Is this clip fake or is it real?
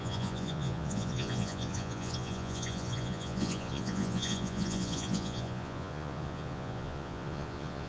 fake